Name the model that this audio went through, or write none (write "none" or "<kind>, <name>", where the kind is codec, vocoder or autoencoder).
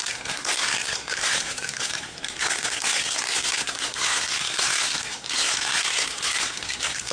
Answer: codec, SNAC